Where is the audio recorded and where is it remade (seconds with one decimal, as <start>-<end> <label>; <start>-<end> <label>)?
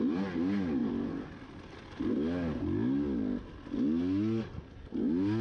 0.0-5.4 recorded